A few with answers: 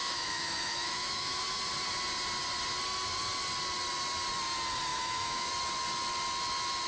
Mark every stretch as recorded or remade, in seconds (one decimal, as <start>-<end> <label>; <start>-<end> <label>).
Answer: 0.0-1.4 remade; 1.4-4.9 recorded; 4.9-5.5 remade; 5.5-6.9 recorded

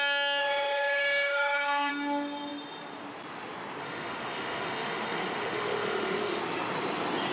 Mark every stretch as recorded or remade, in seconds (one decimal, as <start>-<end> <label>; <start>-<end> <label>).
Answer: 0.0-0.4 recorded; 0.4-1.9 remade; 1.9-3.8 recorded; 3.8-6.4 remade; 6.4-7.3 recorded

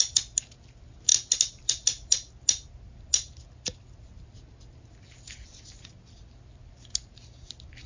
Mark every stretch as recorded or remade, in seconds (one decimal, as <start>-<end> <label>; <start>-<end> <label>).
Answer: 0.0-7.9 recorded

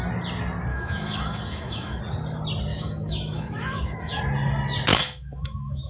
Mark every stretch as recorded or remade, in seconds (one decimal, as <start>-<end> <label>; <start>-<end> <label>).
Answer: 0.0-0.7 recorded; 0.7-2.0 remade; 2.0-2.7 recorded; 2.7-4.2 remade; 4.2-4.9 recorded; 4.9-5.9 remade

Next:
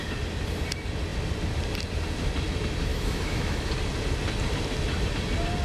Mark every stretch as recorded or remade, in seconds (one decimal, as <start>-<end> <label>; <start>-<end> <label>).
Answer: 0.0-2.9 recorded; 2.9-3.7 remade; 3.7-5.6 recorded